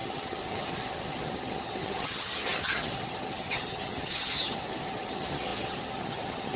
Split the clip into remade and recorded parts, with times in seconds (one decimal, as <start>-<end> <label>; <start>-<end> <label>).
0.0-6.6 remade